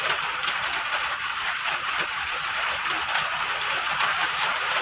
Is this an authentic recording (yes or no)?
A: no